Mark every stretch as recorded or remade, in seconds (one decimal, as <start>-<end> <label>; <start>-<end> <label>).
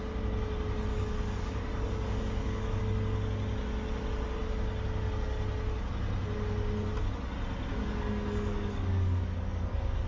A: 0.0-0.9 recorded; 0.9-2.8 remade; 2.8-7.7 recorded; 7.7-10.1 remade